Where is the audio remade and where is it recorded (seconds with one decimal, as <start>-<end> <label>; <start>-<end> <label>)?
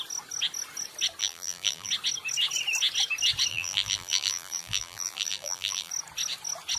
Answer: 0.0-1.2 recorded; 1.2-1.9 remade; 1.9-3.5 recorded; 3.5-5.9 remade; 5.9-6.8 recorded